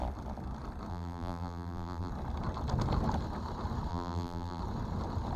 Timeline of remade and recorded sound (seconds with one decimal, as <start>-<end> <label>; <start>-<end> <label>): 0.0-0.9 recorded; 0.9-2.1 remade; 2.1-3.9 recorded; 3.9-4.6 remade; 4.6-5.4 recorded